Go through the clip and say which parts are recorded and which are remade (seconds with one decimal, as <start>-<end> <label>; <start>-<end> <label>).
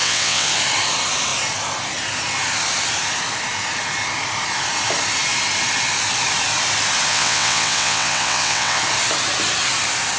0.0-0.5 remade; 0.5-7.1 recorded; 7.1-8.8 remade; 8.8-10.2 recorded